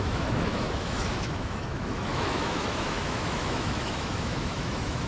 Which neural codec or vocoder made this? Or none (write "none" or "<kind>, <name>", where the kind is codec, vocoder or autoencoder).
autoencoder, DAC-VAE